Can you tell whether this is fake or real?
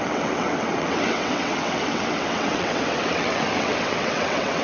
fake